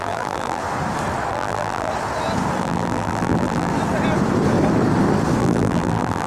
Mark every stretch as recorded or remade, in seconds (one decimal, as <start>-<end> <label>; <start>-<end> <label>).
0.0-0.6 remade; 0.6-1.3 recorded; 1.3-1.9 remade; 1.9-2.6 recorded; 2.6-3.7 remade; 3.7-5.4 recorded; 5.4-6.3 remade